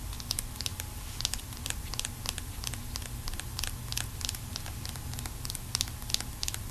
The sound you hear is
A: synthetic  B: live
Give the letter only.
B